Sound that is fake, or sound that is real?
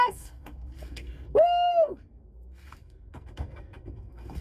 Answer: fake